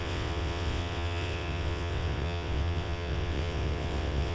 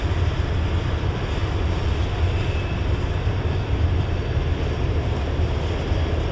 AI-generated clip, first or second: first